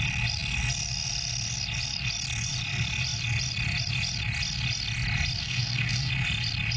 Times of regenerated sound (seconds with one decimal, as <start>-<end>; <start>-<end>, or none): 5.4-6.1